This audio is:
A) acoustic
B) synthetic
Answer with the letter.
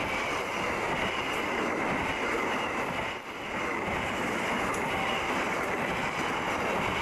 A